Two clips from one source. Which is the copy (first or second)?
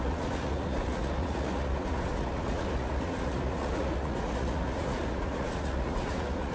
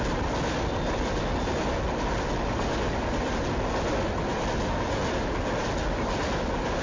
first